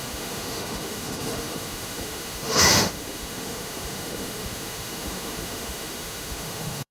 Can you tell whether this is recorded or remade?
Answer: remade